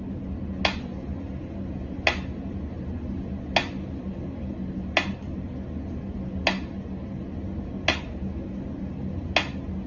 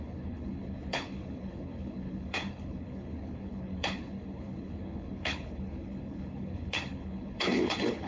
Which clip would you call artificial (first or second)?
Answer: second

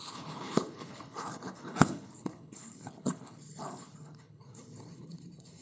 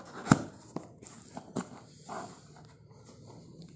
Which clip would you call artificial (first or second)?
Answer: first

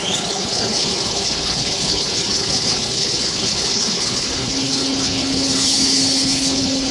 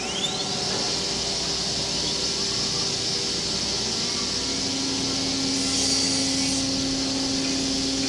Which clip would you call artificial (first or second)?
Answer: first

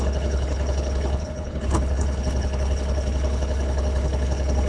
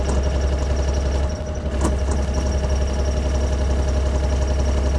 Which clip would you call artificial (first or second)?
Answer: first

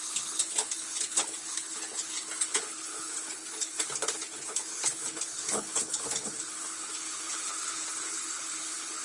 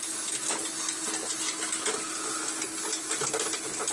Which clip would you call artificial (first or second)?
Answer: first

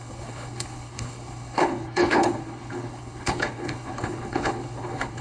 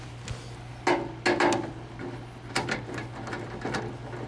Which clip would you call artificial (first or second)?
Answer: first